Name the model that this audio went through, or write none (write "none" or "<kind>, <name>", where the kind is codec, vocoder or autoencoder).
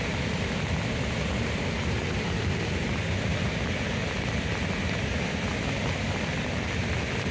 none